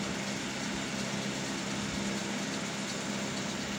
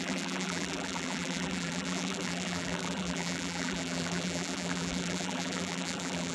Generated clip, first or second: second